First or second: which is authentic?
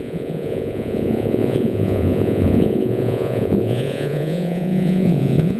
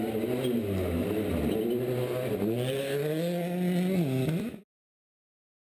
second